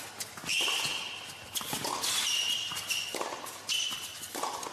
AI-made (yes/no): no